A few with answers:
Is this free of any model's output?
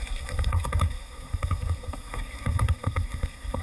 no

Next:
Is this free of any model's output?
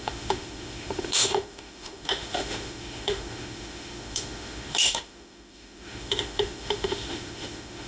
no